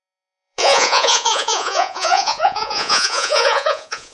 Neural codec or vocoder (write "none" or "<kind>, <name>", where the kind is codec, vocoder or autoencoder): vocoder, Vocos